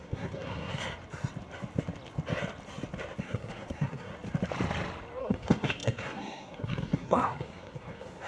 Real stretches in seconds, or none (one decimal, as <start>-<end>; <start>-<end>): 0.8-3.2; 4.1-5.2